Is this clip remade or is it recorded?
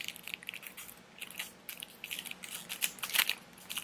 recorded